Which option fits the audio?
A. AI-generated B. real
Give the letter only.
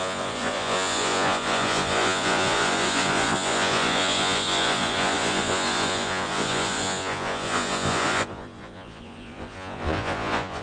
A